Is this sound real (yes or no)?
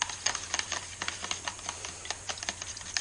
yes